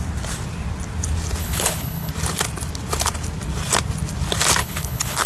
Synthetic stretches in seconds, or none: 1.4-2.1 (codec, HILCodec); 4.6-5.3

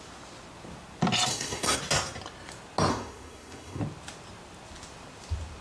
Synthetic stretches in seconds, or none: 1.3-1.8 (codec, SNAC); 2.9-3.8

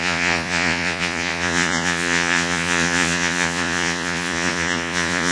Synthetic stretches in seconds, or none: 0.0-5.3 (vocoder, Vocos)

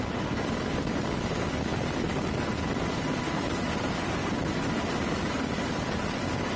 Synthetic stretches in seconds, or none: none

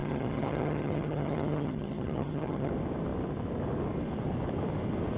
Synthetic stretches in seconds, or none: 0.0-2.7 (vocoder, HiFi-GAN)

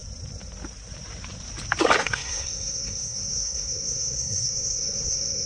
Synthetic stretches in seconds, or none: 2.0-5.5 (codec, SNAC)